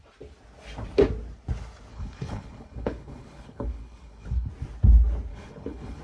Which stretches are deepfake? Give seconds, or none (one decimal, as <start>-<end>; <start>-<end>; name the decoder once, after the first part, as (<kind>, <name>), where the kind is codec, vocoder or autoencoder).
1.9-4.5 (codec, HILCodec); 5.3-6.0